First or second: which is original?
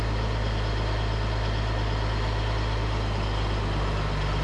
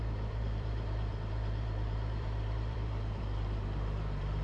first